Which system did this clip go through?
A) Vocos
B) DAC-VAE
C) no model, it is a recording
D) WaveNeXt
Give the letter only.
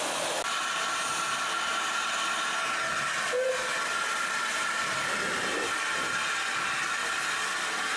C